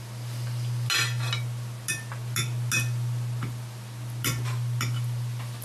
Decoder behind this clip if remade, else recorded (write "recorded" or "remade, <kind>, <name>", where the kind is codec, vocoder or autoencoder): recorded